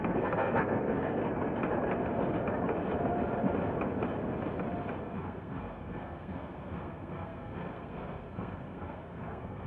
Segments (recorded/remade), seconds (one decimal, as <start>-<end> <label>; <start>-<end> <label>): 0.0-1.2 remade; 1.2-5.0 recorded; 5.0-9.7 remade